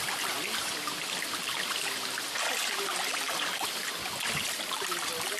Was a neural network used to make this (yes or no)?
no